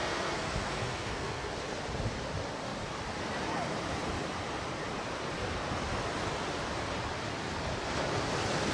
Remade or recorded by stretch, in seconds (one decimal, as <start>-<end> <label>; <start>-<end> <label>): 0.0-1.5 remade; 1.5-8.7 recorded